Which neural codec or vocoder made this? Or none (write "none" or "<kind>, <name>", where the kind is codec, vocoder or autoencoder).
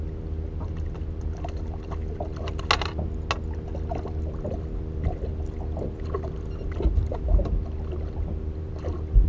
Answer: none